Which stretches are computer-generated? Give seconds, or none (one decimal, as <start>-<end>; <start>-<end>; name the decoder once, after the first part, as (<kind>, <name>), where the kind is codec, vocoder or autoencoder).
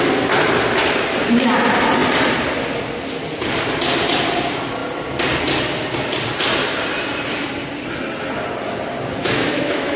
9.2-10.0 (autoencoder, DAC-VAE)